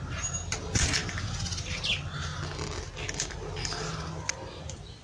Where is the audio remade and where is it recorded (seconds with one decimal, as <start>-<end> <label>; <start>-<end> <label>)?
0.0-5.0 recorded